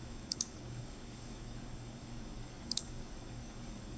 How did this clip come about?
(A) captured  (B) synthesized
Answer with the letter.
B